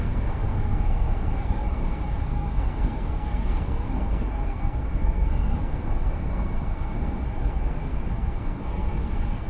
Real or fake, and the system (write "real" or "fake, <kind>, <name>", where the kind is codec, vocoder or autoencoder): fake, codec, SNAC